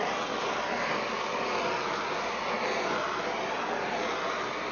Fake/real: real